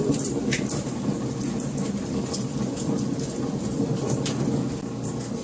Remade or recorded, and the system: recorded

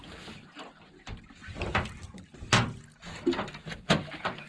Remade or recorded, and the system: recorded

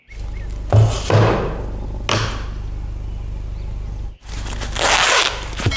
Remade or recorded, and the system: recorded